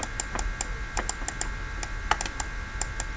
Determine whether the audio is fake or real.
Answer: real